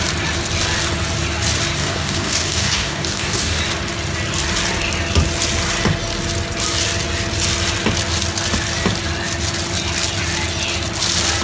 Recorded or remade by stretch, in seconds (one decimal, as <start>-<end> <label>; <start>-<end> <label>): 0.0-1.8 recorded; 1.8-3.6 remade; 3.6-11.4 recorded